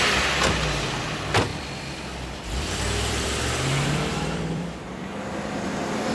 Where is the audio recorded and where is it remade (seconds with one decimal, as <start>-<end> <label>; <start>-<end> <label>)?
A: 0.0-1.5 recorded; 1.5-5.2 remade; 5.2-6.1 recorded